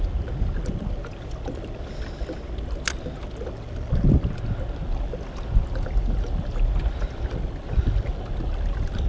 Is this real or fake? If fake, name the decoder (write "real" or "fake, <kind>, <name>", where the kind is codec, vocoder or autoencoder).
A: real